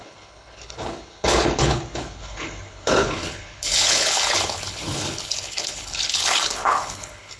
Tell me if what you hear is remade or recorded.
remade